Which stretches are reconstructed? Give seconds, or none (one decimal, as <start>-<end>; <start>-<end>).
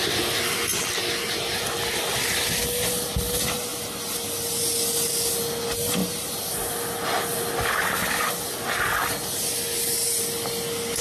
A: none